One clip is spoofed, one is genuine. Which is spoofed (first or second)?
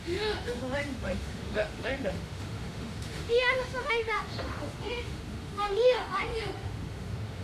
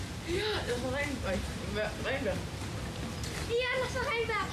first